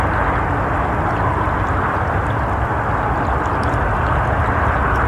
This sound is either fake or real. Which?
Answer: real